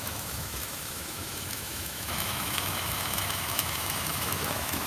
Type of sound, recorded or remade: remade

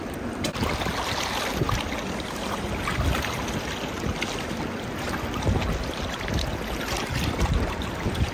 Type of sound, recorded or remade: recorded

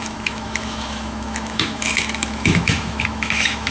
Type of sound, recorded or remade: remade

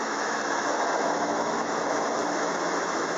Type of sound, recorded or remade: remade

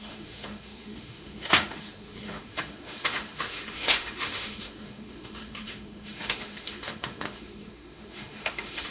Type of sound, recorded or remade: remade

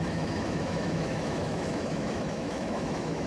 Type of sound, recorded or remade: remade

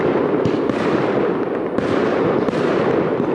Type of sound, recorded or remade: recorded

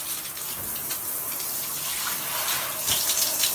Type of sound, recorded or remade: recorded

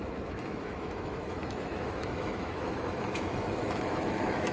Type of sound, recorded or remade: remade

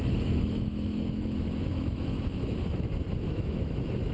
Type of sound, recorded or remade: remade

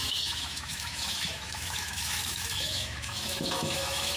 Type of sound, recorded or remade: remade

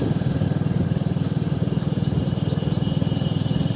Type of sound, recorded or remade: recorded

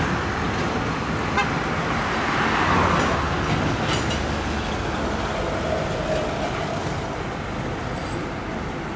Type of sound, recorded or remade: recorded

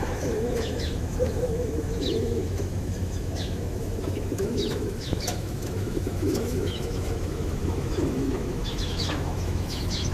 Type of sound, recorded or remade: remade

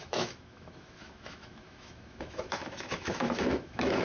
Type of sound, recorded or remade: remade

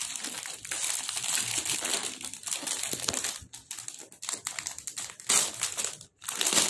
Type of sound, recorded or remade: recorded